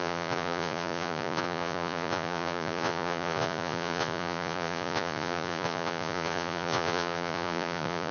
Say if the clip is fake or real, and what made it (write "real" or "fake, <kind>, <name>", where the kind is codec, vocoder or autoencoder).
fake, vocoder, Vocos